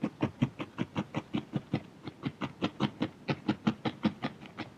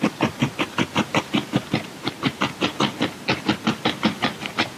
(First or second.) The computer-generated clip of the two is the second